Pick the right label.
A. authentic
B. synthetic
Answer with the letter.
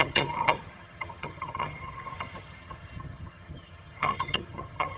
B